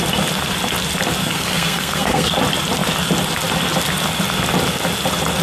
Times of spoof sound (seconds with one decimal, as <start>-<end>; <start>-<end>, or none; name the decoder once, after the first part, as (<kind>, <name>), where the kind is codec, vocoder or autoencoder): 1.2-2.3 (codec, SNAC)